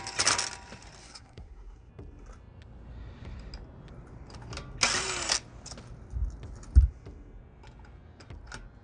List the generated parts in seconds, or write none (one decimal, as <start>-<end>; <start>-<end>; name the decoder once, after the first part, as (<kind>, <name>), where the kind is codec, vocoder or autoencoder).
1.0-1.9 (codec, SNAC)